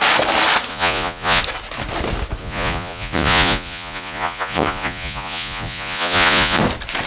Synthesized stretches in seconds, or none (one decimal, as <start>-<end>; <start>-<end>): 0.7-1.4; 2.4-6.6